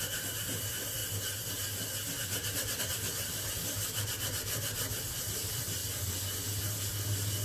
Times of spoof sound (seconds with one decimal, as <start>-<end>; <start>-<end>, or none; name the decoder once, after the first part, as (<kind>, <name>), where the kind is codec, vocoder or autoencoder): none

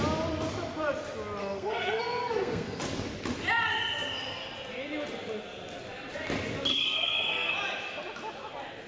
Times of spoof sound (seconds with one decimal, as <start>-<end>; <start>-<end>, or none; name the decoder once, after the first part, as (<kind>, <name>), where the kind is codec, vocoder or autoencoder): 1.4-2.8 (codec, SNAC); 6.7-7.5

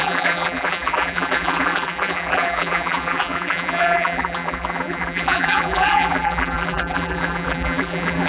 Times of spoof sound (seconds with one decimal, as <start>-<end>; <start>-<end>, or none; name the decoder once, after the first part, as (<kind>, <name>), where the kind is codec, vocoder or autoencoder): 0.0-8.3 (vocoder, BigVGAN v2)

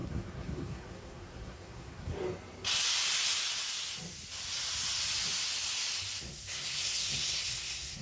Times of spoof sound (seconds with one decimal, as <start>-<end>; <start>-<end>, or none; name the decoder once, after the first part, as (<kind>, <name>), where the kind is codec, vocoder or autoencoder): 0.0-2.2 (codec, SNAC); 6.2-8.0

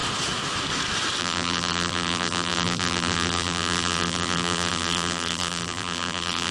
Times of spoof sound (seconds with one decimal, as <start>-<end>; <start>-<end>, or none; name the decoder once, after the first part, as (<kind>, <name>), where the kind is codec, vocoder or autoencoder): 1.2-6.5 (vocoder, BigVGAN v2)

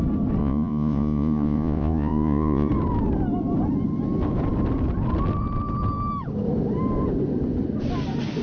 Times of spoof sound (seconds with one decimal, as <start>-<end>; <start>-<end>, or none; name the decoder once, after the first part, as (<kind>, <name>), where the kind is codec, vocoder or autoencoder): 0.4-2.7 (vocoder, Vocos)